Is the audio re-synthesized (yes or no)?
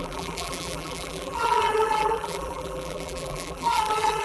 yes